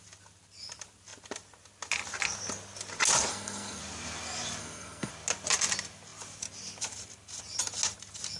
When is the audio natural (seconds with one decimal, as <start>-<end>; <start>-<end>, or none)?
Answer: 0.0-3.3; 3.8-4.6; 5.1-8.4